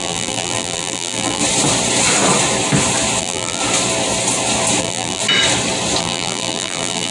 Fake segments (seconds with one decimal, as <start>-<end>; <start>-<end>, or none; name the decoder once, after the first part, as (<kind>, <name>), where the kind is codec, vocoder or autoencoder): 0.0-1.4 (vocoder, BigVGAN v2); 3.2-3.6; 4.8-5.2; 6.0-7.1